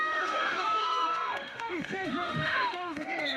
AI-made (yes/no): yes